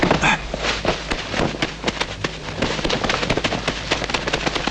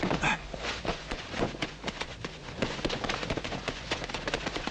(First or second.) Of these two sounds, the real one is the first